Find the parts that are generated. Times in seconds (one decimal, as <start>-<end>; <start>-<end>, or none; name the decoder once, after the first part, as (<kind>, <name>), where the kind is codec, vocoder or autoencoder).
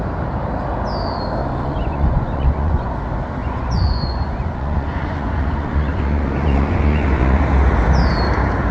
1.4-2.9 (vocoder, Vocos); 3.4-7.4